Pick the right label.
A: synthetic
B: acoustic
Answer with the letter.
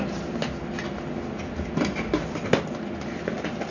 B